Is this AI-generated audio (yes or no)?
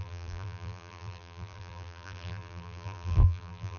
yes